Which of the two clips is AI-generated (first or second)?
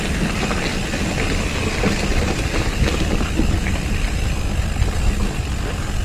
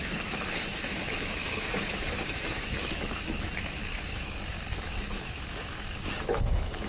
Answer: second